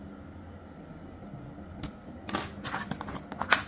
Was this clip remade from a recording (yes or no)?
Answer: no